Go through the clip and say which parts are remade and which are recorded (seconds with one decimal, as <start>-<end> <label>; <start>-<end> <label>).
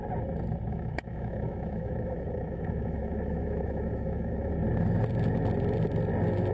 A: 0.0-0.7 recorded; 0.7-4.5 remade; 4.5-6.5 recorded